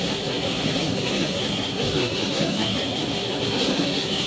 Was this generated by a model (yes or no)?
yes